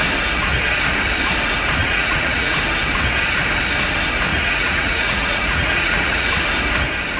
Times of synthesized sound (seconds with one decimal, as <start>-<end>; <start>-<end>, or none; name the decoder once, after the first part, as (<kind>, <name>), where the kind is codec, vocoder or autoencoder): 1.8-2.6 (vocoder, Vocos); 4.3-6.3